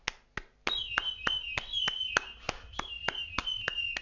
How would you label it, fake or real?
real